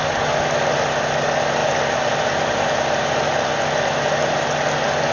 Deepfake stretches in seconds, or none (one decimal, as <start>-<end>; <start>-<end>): none

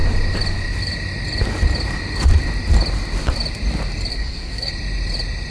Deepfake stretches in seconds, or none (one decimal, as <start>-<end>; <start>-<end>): 4.1-4.7

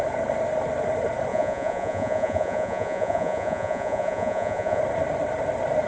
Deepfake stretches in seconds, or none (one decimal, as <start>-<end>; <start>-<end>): 1.3-4.8

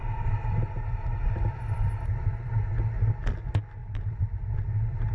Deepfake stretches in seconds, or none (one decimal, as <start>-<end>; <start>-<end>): 0.0-2.7; 3.8-4.4

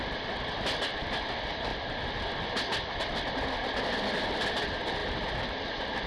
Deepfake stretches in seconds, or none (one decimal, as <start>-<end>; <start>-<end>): none